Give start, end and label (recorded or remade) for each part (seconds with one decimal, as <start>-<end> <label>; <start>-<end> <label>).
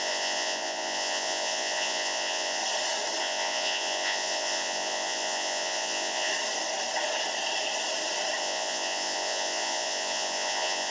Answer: 0.0-2.6 remade; 2.6-3.2 recorded; 3.2-6.3 remade; 6.3-8.4 recorded; 8.4-10.9 remade